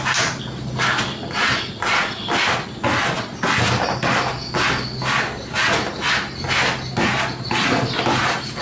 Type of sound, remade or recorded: recorded